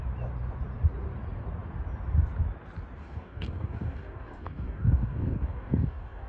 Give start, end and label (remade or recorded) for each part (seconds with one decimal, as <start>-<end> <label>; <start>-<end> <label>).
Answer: 0.0-3.0 recorded; 3.0-6.3 remade